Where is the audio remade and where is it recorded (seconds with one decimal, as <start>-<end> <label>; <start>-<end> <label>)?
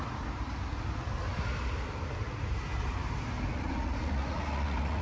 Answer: 0.0-3.5 recorded; 3.5-5.0 remade